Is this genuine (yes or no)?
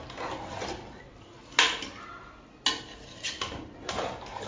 yes